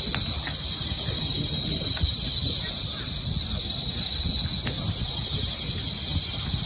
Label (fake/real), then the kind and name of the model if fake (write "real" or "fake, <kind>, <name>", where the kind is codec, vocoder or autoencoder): real